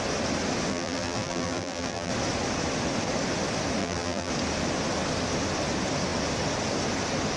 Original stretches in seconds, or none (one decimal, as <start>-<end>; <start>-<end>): 0.0-0.7; 2.1-3.8; 4.3-7.4